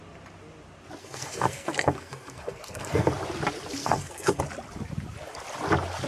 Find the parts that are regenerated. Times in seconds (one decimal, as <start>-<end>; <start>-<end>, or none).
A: 1.0-3.1; 3.8-4.4